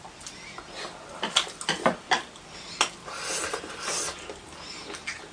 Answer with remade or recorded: recorded